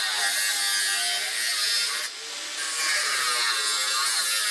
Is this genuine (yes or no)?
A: yes